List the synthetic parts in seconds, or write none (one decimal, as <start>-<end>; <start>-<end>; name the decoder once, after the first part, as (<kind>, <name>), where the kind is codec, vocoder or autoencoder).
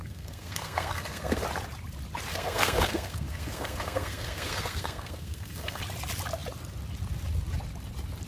0.0-1.4 (codec, SNAC); 2.3-5.8